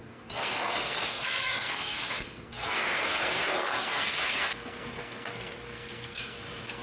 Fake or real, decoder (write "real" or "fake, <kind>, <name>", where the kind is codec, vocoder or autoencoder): fake, codec, SNAC